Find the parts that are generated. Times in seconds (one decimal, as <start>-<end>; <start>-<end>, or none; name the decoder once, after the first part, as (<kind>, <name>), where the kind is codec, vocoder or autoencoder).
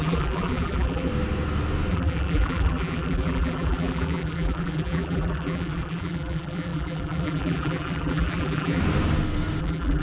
0.0-1.1 (vocoder, BigVGAN v2); 1.9-8.8; 9.6-10.0